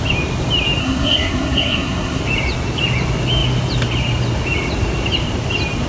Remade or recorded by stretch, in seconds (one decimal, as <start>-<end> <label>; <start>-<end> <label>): 0.0-0.8 recorded; 0.8-2.2 remade; 2.2-5.9 recorded